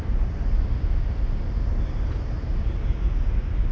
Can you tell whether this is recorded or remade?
recorded